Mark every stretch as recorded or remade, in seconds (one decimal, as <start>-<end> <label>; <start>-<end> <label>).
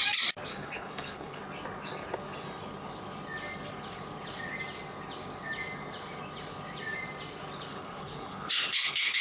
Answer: 0.0-0.5 recorded; 0.5-1.4 remade; 1.4-7.7 recorded; 7.7-9.2 remade